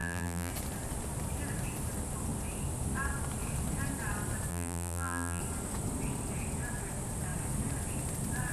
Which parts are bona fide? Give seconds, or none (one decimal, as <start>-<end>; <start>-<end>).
0.5-4.5; 5.4-8.5